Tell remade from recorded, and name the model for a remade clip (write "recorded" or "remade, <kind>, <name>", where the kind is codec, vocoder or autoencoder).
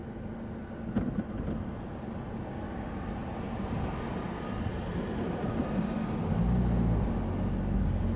recorded